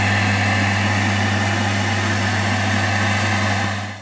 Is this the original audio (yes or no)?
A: yes